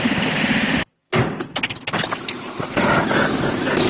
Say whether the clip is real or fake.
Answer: real